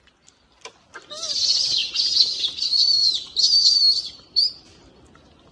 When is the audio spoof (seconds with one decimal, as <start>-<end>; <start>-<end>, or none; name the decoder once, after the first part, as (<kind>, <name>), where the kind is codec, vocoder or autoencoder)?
none